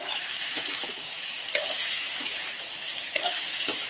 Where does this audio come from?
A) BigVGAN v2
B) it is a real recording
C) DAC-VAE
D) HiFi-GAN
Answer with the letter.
C